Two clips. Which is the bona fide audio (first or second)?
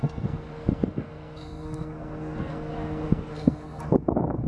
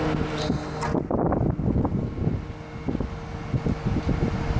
second